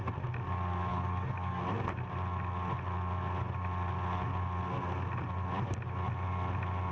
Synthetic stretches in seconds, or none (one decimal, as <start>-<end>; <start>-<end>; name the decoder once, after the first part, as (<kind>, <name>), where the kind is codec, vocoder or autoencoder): 0.9-1.6 (codec, DAC)